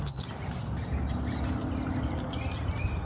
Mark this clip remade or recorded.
recorded